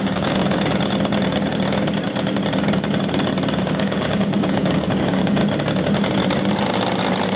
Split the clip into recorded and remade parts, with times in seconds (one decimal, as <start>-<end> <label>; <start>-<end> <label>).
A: 0.0-0.4 remade; 0.4-3.6 recorded; 3.6-5.4 remade; 5.4-7.4 recorded